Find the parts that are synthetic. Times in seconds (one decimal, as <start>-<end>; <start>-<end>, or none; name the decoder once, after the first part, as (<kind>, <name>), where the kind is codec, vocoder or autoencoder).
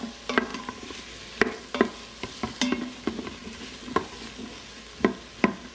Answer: none